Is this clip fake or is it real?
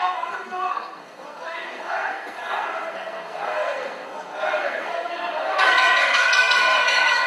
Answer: fake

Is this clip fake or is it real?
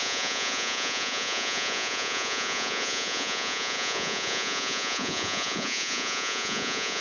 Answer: fake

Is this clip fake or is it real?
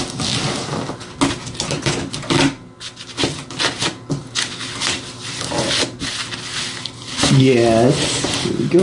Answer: real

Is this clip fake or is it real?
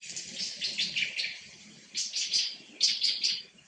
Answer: real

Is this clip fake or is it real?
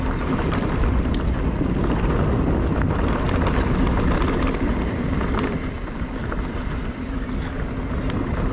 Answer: real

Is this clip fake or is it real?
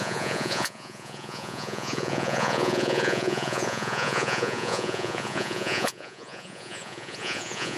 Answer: fake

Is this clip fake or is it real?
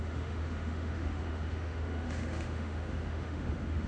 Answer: fake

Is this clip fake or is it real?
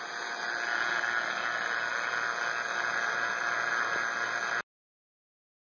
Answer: real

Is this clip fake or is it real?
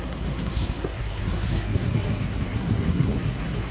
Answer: fake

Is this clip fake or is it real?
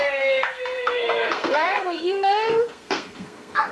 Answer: fake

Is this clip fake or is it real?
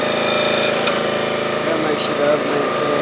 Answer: fake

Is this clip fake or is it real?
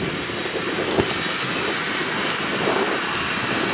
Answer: real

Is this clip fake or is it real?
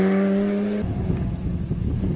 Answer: real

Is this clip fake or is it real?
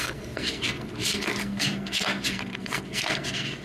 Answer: fake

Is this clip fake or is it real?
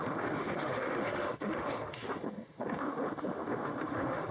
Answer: fake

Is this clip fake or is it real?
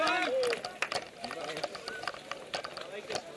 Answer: real